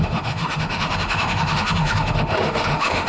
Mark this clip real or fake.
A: fake